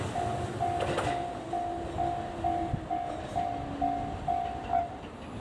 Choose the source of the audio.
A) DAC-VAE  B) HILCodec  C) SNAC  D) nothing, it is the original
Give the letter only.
D